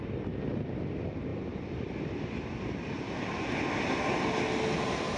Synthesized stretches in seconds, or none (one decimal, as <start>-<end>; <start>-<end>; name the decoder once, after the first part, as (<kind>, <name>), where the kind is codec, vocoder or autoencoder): none